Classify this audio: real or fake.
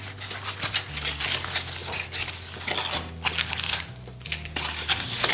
real